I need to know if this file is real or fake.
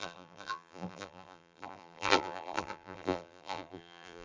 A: fake